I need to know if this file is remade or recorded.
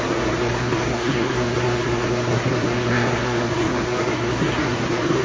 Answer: remade